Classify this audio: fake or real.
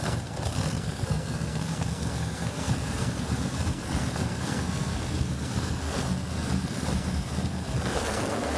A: fake